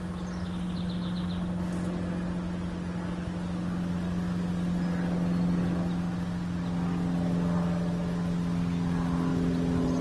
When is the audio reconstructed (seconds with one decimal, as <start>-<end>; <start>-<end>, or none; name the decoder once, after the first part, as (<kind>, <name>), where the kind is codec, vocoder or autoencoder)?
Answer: none